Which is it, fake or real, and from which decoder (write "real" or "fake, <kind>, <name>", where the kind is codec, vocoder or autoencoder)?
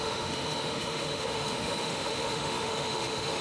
fake, autoencoder, DAC-VAE